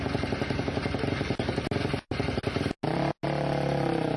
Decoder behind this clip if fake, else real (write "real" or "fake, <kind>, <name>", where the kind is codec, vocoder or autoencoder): real